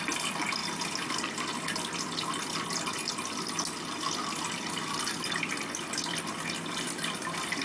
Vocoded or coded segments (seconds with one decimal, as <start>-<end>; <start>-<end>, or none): none